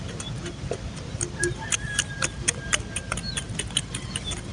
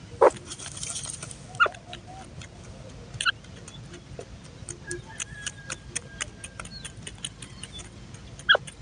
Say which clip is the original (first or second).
second